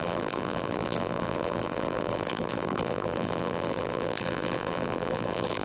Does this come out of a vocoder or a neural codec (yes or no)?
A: yes